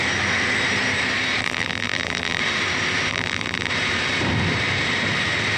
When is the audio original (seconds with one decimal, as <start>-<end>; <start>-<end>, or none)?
0.0-1.4; 2.4-3.1; 3.7-5.6